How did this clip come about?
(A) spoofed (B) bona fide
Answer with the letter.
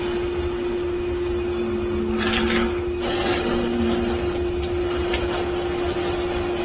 B